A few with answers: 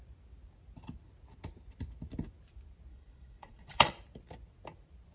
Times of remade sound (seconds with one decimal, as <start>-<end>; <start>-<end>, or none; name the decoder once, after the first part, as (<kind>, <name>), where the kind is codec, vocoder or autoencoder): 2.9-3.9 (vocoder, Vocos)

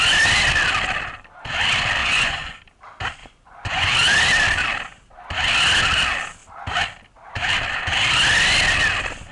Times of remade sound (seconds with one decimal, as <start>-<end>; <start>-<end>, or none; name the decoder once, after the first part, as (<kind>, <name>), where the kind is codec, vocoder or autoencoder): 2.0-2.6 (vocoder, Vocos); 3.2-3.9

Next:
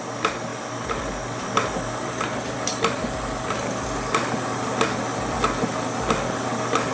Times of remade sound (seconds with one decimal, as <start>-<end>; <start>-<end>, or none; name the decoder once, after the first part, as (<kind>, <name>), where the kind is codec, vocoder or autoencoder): none